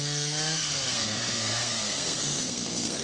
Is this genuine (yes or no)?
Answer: no